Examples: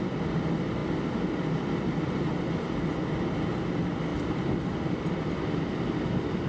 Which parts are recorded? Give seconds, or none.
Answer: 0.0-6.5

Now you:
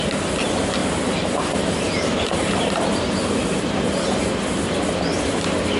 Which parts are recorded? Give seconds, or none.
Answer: 0.0-0.8; 4.3-5.8

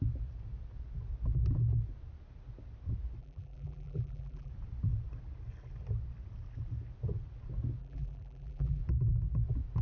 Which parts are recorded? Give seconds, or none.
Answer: 0.0-3.2; 4.5-7.8; 8.8-9.8

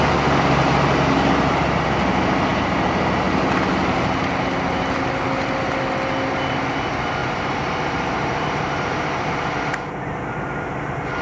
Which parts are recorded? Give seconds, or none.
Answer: 0.0-2.5; 3.2-7.2; 9.3-11.2

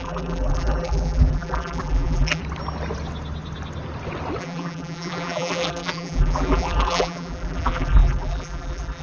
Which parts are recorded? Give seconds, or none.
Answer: 2.4-4.4

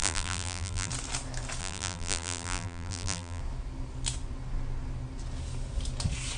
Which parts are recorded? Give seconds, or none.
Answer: 0.9-1.6; 3.4-6.4